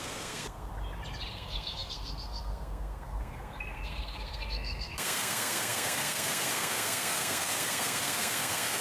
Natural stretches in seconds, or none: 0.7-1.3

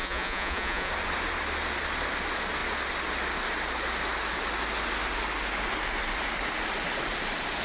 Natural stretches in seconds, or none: 0.9-7.6

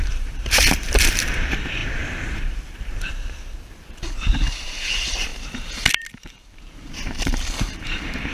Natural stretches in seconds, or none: 5.3-6.1

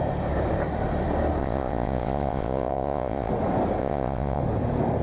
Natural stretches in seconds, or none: 0.0-1.4; 3.3-3.8; 4.4-5.0